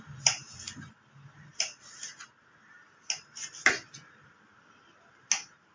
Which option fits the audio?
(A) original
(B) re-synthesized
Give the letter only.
A